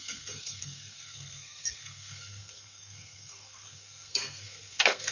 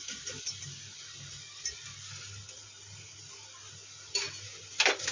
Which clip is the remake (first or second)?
first